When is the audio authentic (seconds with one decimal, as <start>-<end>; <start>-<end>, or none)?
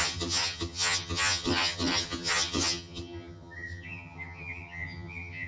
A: none